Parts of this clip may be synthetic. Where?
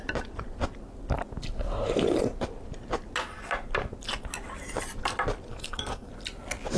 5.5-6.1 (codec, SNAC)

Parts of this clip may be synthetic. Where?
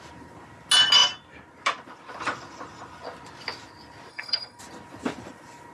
4.1-4.6 (codec, SNAC)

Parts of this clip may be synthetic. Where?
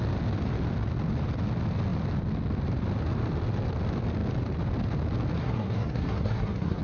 5.4-6.8 (codec, SNAC)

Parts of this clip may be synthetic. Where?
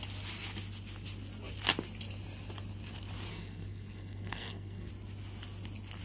3.3-4.9 (codec, SNAC)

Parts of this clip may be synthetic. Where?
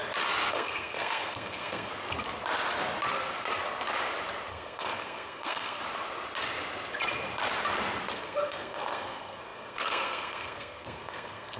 0.5-1.9 (codec, SNAC); 4.5-5.8; 8.1-11.6